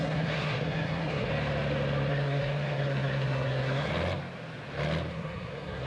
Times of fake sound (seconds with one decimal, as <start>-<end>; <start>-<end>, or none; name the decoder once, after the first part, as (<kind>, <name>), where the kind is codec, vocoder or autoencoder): 0.0-1.3 (codec, SNAC); 2.1-3.9; 5.1-5.9